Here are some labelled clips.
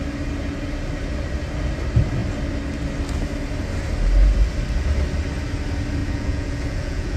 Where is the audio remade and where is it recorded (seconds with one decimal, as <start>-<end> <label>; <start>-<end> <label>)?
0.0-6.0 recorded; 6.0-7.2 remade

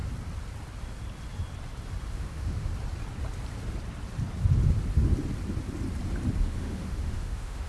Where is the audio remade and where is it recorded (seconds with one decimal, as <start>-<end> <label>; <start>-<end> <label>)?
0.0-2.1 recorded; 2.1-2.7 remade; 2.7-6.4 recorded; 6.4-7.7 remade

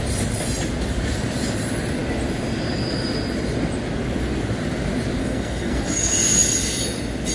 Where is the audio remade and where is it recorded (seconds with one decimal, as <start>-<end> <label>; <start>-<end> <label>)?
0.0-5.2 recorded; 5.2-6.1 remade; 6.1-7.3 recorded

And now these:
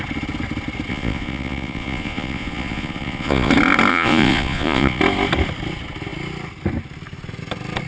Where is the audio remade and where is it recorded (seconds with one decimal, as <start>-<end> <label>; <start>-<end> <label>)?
0.0-0.9 recorded; 0.9-3.5 remade; 3.5-3.9 recorded; 3.9-5.0 remade; 5.0-7.9 recorded

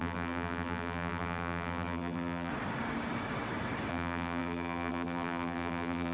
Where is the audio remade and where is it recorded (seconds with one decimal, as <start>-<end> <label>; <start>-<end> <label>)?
0.0-2.5 remade; 2.5-3.9 recorded; 3.9-6.1 remade

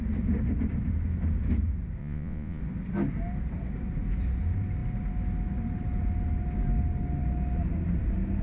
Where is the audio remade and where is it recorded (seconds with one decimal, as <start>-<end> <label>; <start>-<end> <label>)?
0.0-2.0 recorded; 2.0-2.6 remade; 2.6-8.4 recorded